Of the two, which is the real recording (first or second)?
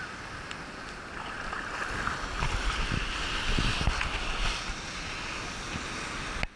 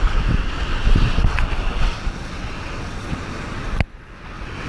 first